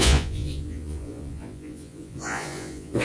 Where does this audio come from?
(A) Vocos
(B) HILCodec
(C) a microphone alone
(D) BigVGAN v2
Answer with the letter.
A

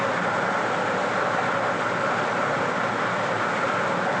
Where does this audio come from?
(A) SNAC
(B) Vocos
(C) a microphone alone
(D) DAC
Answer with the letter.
C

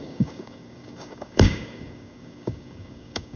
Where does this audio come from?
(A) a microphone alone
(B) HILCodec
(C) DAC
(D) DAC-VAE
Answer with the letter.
C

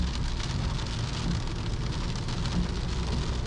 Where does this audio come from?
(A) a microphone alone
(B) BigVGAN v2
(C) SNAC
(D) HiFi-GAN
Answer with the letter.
A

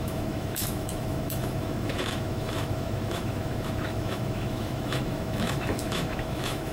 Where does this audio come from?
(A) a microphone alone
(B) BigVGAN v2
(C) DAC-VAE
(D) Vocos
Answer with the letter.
C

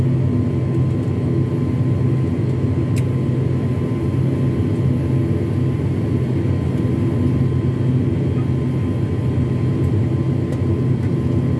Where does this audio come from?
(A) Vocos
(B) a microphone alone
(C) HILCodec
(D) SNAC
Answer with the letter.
B